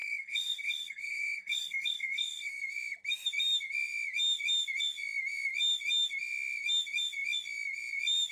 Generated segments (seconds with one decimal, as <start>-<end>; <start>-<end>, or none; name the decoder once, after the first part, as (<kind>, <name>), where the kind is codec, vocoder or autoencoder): 0.0-2.6 (codec, SNAC)